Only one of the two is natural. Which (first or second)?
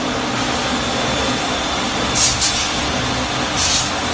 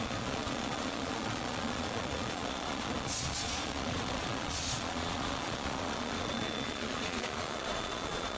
first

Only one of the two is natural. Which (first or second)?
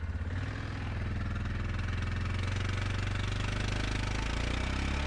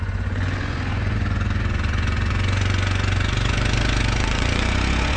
first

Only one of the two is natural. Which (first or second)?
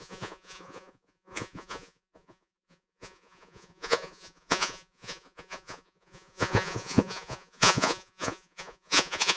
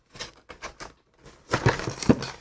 second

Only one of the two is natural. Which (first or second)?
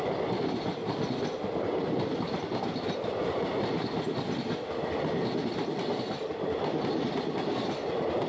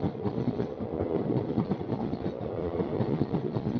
first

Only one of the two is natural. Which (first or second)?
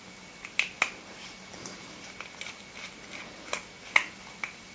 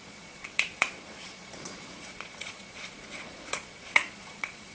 first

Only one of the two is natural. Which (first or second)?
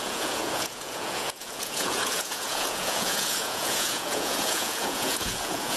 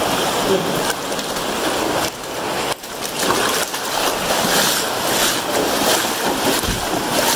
second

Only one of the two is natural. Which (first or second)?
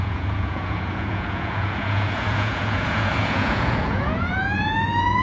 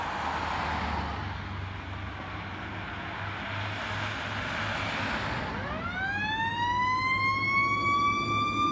second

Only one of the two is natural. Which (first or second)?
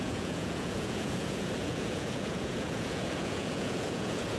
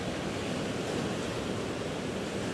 second